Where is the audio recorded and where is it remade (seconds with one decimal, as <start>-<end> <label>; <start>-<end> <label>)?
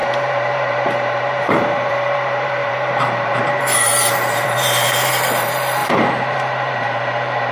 0.0-7.5 remade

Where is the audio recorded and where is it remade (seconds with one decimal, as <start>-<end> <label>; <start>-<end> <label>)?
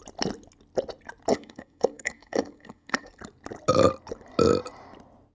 0.0-1.3 recorded; 1.3-3.2 remade; 3.2-5.3 recorded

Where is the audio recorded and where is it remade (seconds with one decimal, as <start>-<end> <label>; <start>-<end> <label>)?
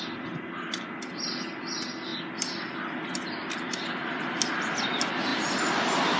0.0-6.2 recorded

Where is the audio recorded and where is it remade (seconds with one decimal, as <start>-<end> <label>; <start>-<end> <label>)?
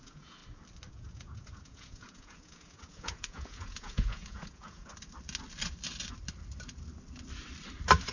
0.0-0.4 remade; 0.4-0.9 recorded; 0.9-4.9 remade; 4.9-8.1 recorded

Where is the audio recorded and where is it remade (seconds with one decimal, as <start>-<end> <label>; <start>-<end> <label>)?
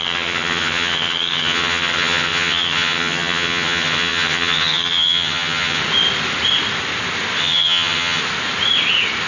0.0-5.8 remade; 5.8-7.4 recorded; 7.4-8.2 remade; 8.2-9.3 recorded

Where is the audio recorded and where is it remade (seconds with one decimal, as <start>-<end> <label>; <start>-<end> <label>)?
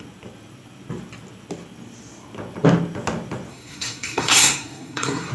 0.0-3.5 recorded; 3.5-5.3 remade